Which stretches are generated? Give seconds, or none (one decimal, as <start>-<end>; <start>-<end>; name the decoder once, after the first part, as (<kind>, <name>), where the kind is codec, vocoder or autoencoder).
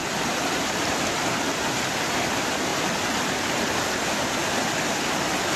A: none